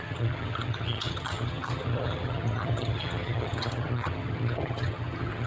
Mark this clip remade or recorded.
remade